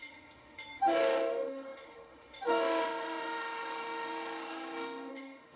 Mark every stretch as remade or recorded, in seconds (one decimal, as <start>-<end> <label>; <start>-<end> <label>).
0.0-5.6 remade